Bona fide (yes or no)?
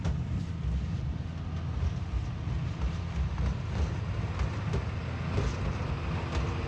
yes